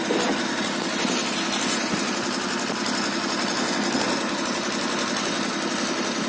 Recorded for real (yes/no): yes